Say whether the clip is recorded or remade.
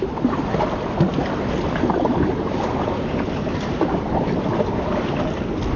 recorded